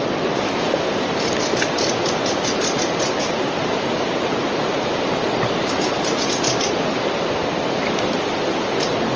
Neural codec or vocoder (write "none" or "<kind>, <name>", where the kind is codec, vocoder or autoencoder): none